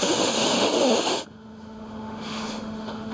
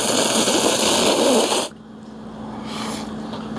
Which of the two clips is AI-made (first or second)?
first